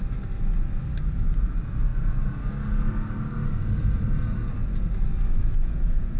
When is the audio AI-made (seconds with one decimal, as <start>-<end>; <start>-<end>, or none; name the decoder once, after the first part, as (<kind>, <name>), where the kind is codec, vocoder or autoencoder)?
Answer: none